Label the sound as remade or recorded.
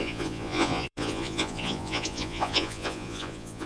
remade